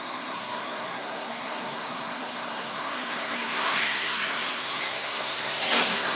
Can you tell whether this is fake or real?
fake